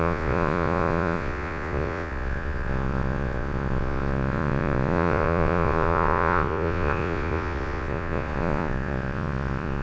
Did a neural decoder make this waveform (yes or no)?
yes